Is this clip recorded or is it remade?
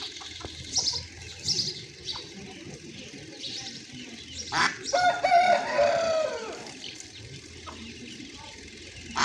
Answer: remade